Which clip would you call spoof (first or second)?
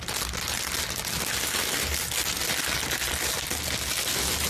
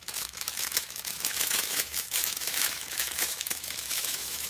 second